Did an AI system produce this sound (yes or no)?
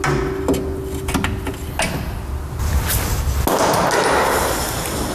no